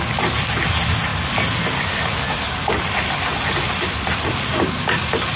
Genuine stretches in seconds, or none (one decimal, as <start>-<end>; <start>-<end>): 0.0-5.4